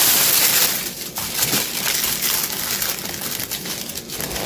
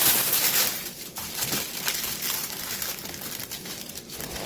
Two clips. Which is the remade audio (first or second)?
second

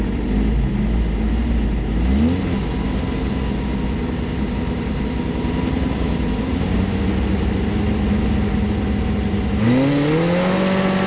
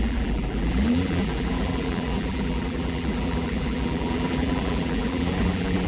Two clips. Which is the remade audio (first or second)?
second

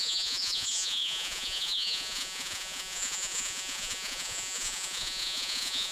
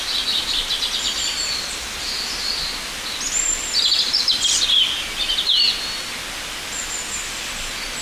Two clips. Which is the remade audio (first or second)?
first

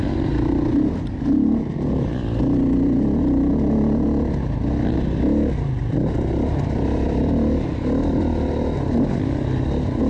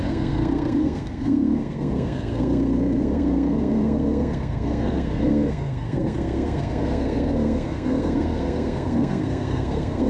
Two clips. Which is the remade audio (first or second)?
second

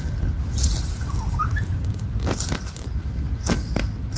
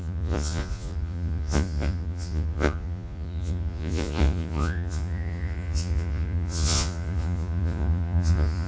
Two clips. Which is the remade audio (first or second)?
second